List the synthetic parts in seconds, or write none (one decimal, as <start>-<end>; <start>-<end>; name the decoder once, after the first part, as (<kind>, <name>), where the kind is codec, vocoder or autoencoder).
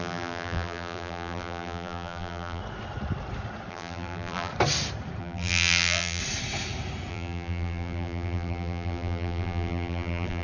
0.0-2.6 (vocoder, BigVGAN v2); 3.7-4.5; 5.2-6.2; 7.1-10.4